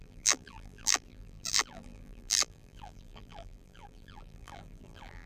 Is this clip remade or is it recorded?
remade